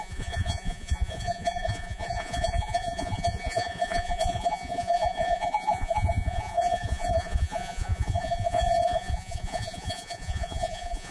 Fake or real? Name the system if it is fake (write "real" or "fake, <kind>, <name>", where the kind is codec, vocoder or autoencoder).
fake, vocoder, Vocos